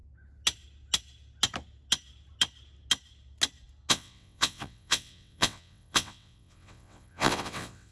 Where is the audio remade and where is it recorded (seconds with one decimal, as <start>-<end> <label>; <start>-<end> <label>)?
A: 0.0-3.9 recorded; 3.9-7.9 remade